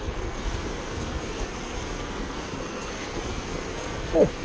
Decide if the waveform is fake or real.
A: fake